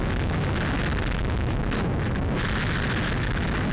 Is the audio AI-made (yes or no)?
no